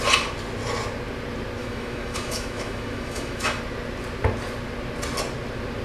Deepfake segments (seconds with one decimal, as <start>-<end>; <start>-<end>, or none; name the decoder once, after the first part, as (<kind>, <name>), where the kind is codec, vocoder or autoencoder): 1.6-3.6 (autoencoder, DAC-VAE)